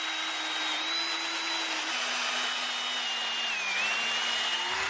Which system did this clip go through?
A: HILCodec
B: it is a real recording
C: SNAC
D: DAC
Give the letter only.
B